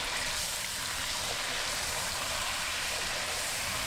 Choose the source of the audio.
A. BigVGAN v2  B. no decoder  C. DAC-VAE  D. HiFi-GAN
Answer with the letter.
A